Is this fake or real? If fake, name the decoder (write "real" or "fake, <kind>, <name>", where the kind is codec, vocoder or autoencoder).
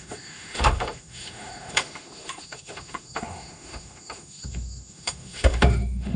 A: fake, autoencoder, DAC-VAE